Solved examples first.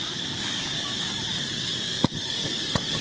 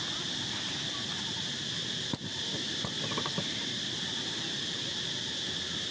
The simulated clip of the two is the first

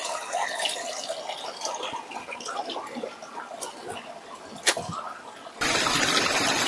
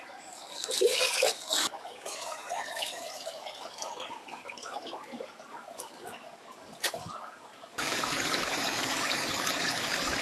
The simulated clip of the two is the second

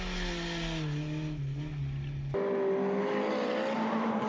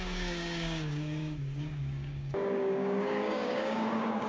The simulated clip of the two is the second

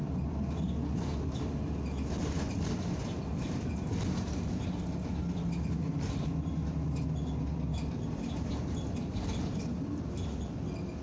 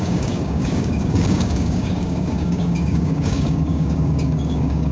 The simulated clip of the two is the second